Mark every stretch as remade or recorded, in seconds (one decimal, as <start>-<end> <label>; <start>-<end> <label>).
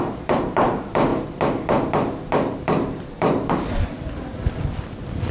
0.0-1.1 remade; 1.1-2.6 recorded; 2.6-5.3 remade